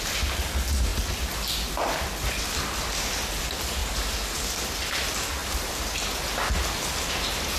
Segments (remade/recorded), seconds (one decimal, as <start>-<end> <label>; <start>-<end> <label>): 0.0-7.6 recorded